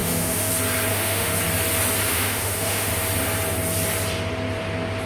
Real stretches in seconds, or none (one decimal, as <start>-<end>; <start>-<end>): 0.5-0.9; 1.4-2.1; 2.9-5.1